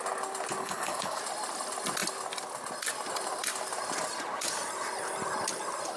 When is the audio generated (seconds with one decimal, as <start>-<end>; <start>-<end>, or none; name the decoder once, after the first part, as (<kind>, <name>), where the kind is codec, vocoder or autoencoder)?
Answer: 0.6-1.2 (codec, HILCodec)